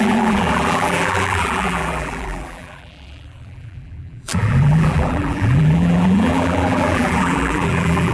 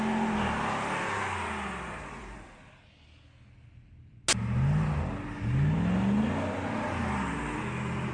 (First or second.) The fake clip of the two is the first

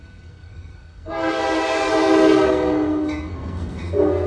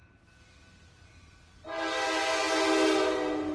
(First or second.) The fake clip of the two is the first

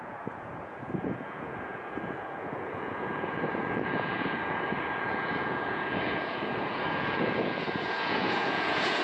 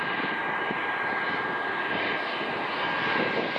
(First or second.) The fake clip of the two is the first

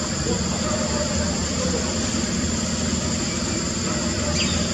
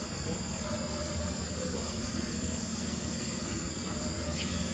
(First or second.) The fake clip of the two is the second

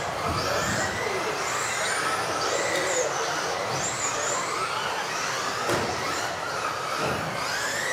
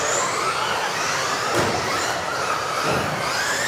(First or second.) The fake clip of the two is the second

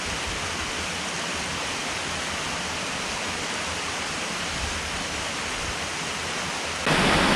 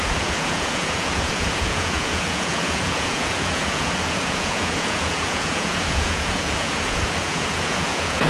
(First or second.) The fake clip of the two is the second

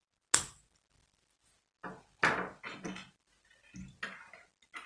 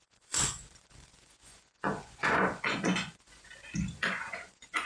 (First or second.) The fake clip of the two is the second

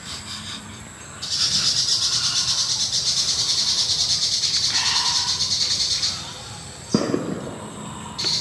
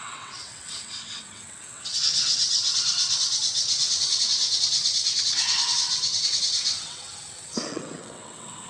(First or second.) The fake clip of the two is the second